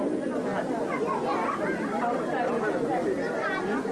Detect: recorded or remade recorded